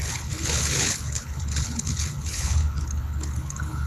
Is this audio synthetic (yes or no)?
yes